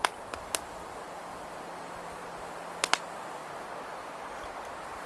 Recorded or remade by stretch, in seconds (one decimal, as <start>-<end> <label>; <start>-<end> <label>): 0.0-5.1 recorded